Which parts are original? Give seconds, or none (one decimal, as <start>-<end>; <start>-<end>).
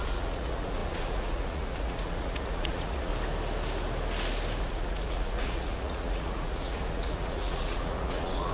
3.1-4.6